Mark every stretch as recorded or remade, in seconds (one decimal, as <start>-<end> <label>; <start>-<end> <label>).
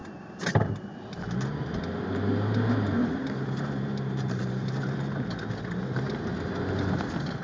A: 0.0-1.0 remade; 1.0-3.0 recorded; 3.0-6.2 remade; 6.2-7.4 recorded